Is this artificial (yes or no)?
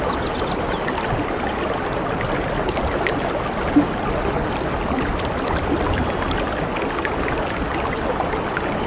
no